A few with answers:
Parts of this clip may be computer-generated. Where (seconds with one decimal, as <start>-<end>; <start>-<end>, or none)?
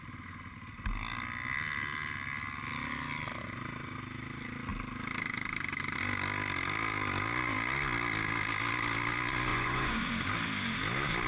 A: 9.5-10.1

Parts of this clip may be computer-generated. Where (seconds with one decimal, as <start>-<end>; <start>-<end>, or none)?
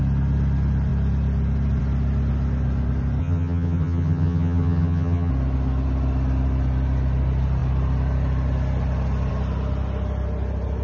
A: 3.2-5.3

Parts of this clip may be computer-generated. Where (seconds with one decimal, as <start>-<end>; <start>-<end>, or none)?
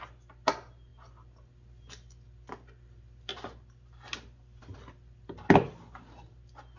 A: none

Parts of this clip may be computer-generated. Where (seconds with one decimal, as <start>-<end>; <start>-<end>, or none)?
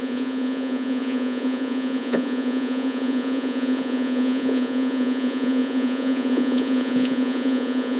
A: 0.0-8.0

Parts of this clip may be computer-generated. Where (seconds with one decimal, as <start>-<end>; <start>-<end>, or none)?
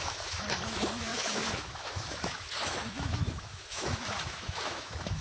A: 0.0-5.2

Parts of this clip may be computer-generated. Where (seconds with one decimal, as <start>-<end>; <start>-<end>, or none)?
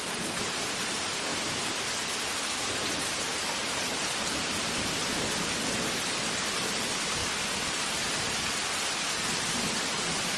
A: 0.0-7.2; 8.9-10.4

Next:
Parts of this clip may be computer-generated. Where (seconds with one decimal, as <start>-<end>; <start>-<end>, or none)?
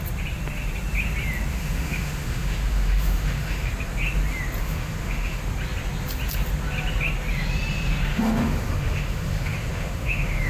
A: 1.5-3.7; 4.6-5.4; 8.1-10.5